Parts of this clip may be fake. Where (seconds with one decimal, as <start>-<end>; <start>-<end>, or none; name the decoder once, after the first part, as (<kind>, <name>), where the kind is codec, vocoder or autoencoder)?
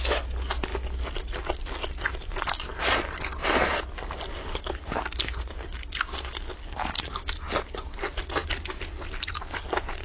4.4-5.0 (codec, HILCodec)